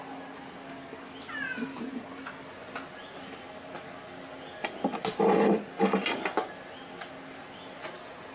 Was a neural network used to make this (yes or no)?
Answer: no